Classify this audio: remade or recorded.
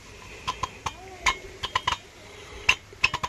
recorded